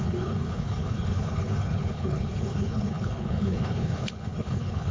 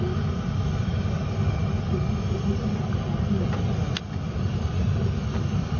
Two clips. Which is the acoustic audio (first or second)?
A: second